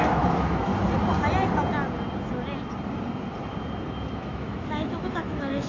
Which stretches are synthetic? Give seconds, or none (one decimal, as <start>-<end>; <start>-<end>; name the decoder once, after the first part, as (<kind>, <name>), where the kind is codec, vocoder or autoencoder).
0.0-0.7 (autoencoder, DAC-VAE); 4.1-5.7